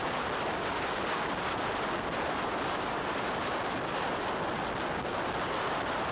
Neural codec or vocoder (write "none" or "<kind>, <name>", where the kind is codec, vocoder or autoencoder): none